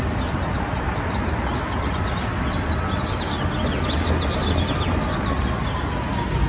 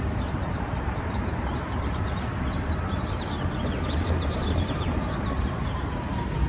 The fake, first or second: second